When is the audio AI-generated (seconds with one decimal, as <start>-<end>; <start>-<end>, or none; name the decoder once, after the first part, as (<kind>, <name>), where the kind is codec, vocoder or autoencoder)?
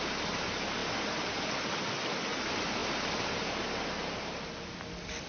none